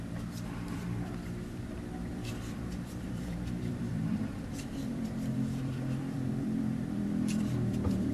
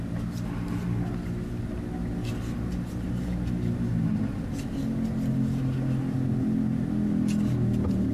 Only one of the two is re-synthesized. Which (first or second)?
first